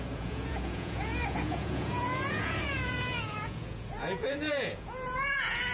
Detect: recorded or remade remade